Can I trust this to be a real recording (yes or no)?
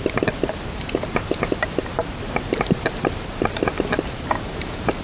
no